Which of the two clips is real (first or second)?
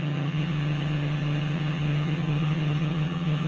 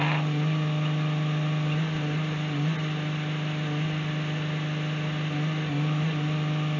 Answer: second